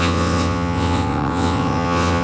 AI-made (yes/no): yes